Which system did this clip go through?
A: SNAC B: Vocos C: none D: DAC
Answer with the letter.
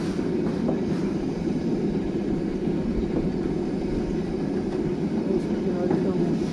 C